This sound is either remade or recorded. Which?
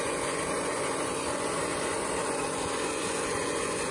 remade